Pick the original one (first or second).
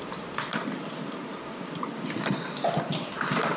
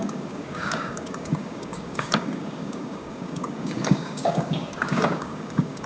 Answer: first